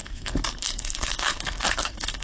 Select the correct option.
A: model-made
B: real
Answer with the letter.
A